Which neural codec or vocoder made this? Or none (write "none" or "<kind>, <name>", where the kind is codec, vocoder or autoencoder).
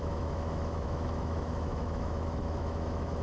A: autoencoder, DAC-VAE